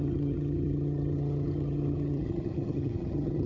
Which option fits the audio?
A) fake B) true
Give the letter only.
A